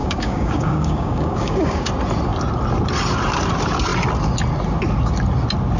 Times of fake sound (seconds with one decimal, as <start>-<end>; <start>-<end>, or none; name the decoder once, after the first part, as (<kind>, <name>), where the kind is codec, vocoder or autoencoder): 0.0-1.9 (codec, DAC)